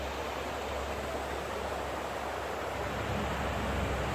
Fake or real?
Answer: real